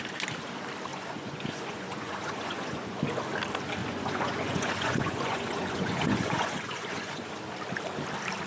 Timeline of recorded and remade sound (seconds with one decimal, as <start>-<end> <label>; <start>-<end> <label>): 0.0-0.9 recorded; 0.9-3.0 remade; 3.0-3.8 recorded; 3.8-7.3 remade; 7.3-8.5 recorded